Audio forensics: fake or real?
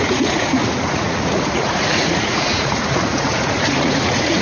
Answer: fake